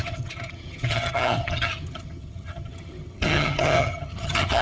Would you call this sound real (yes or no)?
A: no